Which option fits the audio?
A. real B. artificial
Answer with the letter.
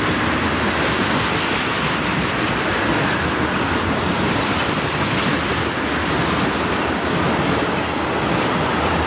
A